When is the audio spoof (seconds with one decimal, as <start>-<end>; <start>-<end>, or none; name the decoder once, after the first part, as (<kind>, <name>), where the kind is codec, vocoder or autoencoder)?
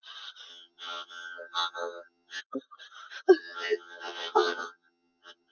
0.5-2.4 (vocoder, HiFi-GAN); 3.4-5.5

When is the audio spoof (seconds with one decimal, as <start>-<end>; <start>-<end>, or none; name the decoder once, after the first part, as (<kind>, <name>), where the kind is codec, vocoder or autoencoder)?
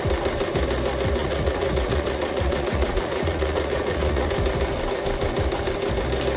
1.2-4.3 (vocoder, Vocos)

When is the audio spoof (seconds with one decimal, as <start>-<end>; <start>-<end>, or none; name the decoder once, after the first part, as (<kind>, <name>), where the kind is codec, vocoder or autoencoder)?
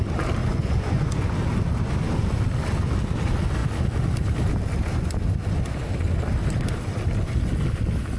0.4-1.4 (vocoder, Vocos)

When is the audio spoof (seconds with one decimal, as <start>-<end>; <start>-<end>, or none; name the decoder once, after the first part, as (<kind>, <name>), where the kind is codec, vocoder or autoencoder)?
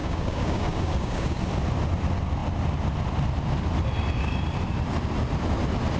0.0-1.4 (codec, DAC)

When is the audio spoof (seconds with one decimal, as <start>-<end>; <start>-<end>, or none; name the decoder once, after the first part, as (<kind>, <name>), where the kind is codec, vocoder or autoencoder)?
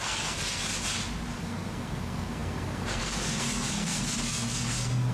0.0-0.7 (codec, SNAC); 1.4-5.1